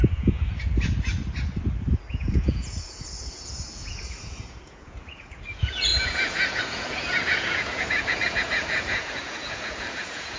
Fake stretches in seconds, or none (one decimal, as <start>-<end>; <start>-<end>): 0.0-0.4; 2.1-10.4